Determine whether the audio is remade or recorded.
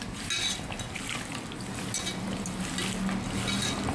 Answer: recorded